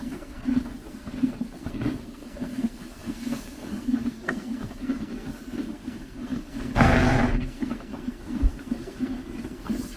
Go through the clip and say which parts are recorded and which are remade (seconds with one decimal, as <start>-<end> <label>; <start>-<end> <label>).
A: 0.0-10.0 remade